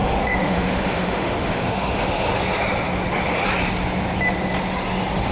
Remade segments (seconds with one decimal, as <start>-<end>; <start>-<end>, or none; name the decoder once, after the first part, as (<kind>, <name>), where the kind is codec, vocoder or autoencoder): 0.0-2.3 (autoencoder, DAC-VAE)